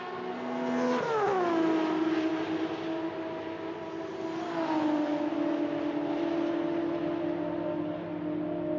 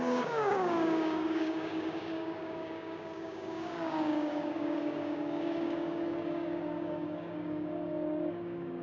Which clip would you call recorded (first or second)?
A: first